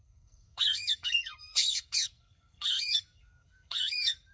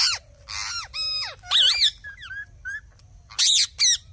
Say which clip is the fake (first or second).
first